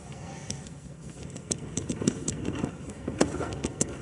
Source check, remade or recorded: remade